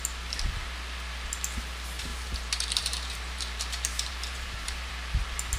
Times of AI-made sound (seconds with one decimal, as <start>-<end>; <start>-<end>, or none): 2.1-4.9